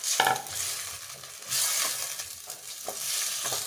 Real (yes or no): yes